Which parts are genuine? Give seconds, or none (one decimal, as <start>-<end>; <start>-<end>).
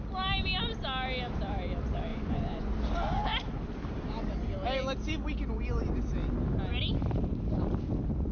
0.0-2.1; 2.7-8.3